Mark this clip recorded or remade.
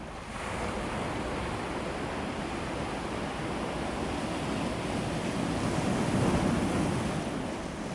recorded